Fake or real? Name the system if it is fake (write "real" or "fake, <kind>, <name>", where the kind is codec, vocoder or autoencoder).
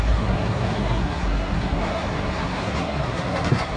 fake, codec, SNAC